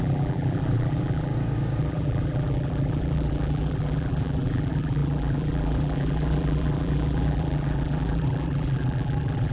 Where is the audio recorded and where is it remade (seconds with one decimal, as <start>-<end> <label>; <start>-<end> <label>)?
0.0-1.3 remade; 1.3-1.8 recorded; 1.8-9.5 remade